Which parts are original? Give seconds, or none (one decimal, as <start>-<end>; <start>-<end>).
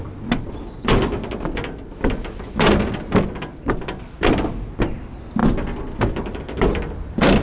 0.0-7.4